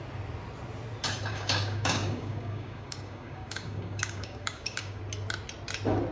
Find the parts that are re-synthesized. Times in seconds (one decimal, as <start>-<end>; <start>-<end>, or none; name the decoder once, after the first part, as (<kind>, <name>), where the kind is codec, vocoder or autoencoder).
1.3-5.0 (codec, DAC)